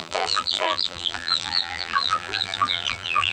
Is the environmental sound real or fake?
fake